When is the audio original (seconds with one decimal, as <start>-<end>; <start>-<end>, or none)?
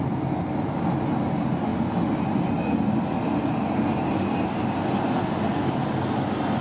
0.0-6.6